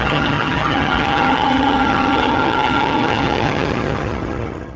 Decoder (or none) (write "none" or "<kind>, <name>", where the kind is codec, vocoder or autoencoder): vocoder, HiFi-GAN